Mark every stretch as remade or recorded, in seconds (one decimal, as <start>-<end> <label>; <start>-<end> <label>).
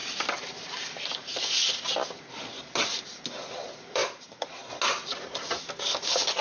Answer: 0.0-6.4 recorded